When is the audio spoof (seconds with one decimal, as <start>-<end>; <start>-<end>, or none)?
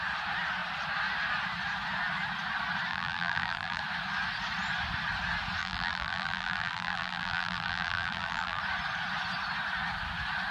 2.9-3.8; 5.6-8.6